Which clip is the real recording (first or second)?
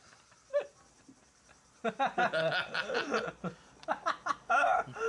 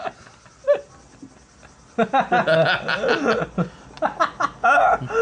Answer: second